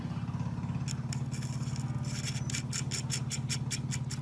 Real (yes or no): yes